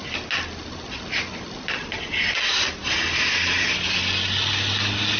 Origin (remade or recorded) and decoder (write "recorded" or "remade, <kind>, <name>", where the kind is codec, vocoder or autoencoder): recorded